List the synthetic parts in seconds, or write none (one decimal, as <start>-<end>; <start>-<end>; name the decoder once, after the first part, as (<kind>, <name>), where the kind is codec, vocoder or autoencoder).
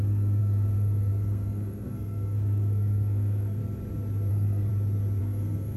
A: 0.0-3.6 (codec, SNAC); 4.3-4.7; 5.2-5.8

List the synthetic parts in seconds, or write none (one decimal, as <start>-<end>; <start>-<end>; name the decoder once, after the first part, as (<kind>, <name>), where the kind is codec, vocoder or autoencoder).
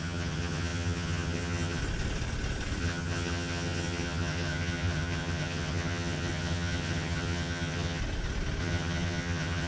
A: 0.0-1.8 (vocoder, HiFi-GAN); 2.8-8.0; 8.6-9.7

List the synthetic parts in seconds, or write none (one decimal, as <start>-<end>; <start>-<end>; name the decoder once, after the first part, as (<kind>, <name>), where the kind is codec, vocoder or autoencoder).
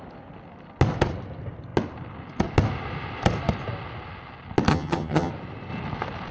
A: 4.7-5.3 (vocoder, HiFi-GAN)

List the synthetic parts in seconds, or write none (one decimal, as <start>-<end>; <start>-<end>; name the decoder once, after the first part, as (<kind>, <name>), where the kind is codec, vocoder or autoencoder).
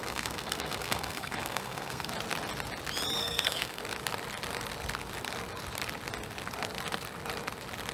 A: 0.0-2.1 (codec, SNAC); 3.2-3.8